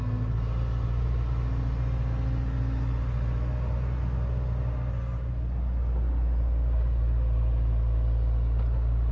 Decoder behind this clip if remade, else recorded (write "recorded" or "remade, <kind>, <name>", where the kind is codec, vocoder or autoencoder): recorded